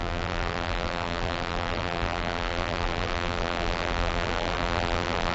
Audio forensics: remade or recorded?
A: remade